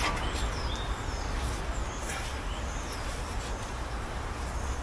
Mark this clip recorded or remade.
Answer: recorded